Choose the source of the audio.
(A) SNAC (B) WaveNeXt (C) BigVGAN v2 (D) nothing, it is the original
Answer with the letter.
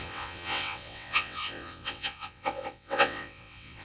B